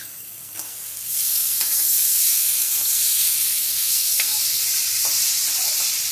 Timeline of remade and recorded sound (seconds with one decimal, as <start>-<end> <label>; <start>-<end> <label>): 0.0-4.6 remade; 4.6-6.1 recorded